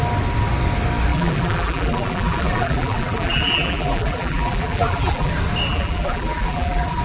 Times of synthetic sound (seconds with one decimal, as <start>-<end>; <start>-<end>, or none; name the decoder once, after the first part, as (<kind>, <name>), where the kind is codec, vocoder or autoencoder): 1.1-5.3 (vocoder, BigVGAN v2); 5.7-7.0